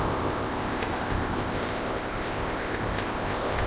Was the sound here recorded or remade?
remade